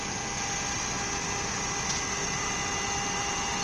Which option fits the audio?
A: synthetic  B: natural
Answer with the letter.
B